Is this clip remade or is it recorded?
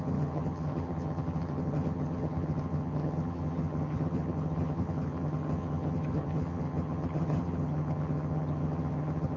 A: remade